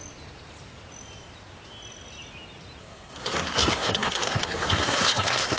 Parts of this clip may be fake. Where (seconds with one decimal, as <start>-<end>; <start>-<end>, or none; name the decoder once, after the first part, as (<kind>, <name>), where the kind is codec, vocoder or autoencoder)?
2.8-5.6 (codec, SNAC)